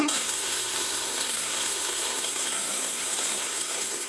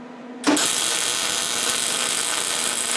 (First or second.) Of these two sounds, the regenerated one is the first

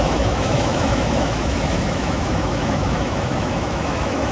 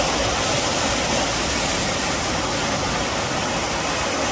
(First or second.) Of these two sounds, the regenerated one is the first